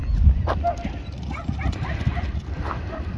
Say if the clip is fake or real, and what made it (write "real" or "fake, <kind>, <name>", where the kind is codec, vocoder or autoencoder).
real